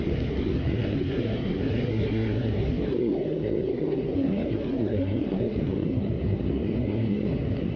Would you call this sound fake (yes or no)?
yes